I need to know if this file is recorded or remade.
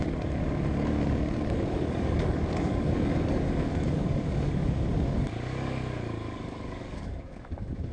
remade